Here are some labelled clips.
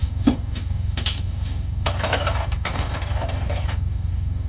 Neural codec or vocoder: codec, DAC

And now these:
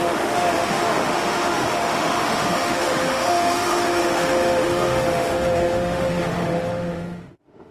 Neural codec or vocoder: autoencoder, DAC-VAE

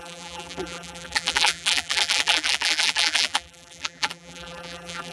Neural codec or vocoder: vocoder, BigVGAN v2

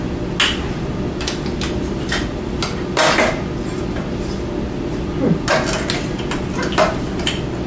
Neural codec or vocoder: none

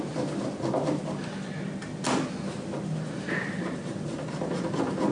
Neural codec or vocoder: none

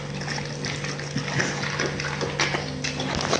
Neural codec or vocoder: none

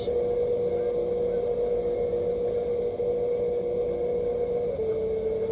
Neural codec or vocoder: none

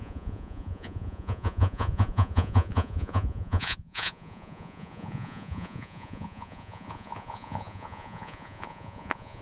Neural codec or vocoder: vocoder, Vocos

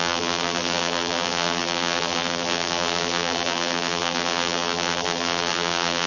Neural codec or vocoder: vocoder, BigVGAN v2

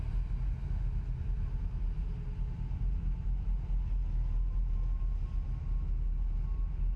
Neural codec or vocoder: none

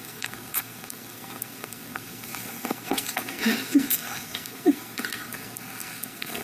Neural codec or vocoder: codec, SNAC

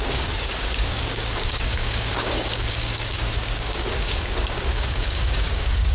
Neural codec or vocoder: codec, DAC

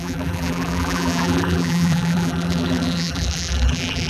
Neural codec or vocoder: vocoder, BigVGAN v2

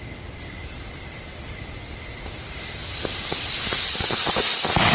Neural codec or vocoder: none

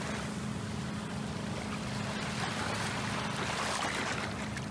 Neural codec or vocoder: none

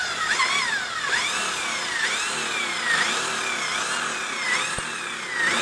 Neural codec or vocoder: none